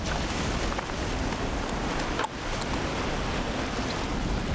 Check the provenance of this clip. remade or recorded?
recorded